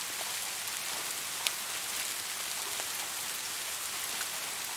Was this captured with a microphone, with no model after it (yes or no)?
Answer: yes